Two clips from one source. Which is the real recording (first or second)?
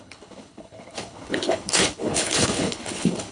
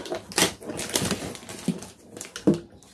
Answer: second